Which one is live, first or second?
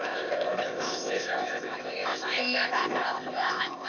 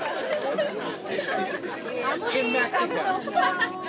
second